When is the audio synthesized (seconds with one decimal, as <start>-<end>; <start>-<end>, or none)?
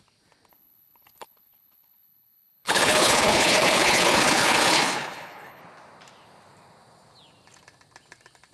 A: 0.5-5.6